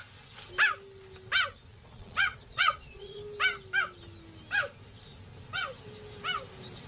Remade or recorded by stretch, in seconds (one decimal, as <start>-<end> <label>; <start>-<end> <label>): 0.0-1.7 recorded; 1.7-3.2 remade; 3.2-6.9 recorded